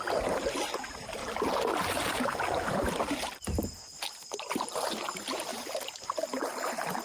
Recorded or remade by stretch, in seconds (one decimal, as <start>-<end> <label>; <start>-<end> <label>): 0.0-1.2 recorded; 1.2-3.9 remade; 3.9-5.5 recorded; 5.5-6.4 remade; 6.4-7.0 recorded